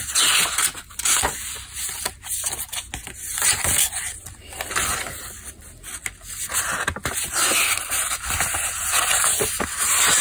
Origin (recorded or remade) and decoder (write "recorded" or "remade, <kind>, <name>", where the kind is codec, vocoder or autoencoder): recorded